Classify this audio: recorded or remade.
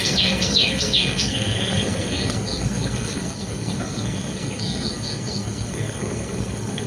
remade